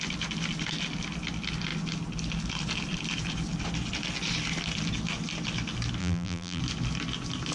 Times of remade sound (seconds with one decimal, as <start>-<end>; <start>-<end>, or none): 6.0-6.6

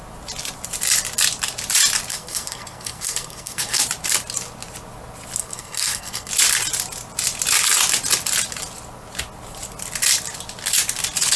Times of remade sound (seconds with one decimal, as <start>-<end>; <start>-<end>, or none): 2.1-3.8; 5.4-6.3

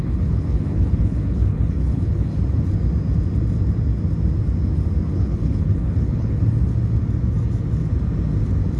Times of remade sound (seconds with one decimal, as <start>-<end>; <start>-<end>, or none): 0.0-2.3; 5.1-6.4

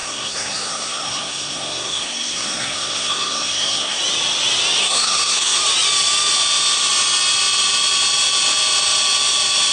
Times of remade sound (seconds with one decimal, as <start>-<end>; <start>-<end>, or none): 0.0-4.0; 4.8-5.6

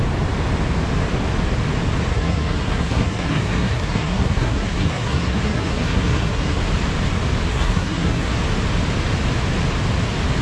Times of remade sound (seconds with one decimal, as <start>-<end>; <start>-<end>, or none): 2.1-6.6; 7.5-8.3

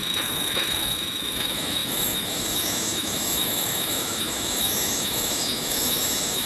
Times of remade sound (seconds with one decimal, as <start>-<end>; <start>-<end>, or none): 0.0-6.5

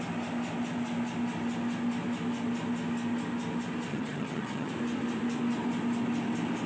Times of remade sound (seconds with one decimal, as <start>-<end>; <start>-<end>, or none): 3.9-4.7